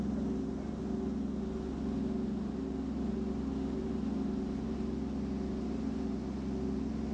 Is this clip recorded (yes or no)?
yes